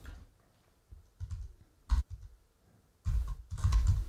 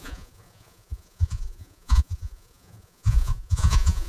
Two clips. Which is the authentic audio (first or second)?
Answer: first